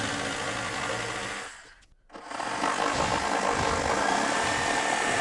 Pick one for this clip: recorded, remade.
recorded